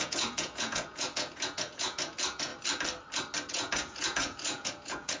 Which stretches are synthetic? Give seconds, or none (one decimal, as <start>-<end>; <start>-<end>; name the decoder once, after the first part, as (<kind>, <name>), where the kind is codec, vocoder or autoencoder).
0.0-2.5 (vocoder, Vocos); 3.5-5.2